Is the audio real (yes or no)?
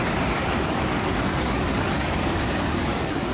no